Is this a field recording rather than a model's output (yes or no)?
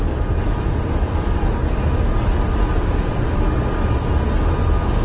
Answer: yes